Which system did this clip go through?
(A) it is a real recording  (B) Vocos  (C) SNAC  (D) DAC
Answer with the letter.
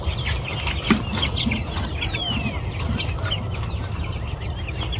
A